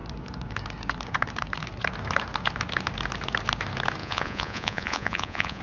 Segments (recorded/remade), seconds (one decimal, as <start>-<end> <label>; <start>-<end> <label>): 0.0-4.0 recorded; 4.0-5.6 remade